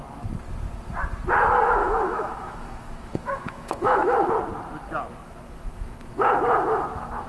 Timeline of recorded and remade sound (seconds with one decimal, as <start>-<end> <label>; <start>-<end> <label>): 0.0-1.8 recorded; 1.8-4.3 remade; 4.3-5.2 recorded; 5.2-7.3 remade